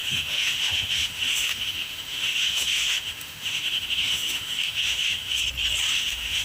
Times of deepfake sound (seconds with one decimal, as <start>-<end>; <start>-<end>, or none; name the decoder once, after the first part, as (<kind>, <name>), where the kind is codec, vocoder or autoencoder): 0.0-5.4 (autoencoder, DAC-VAE); 5.9-6.4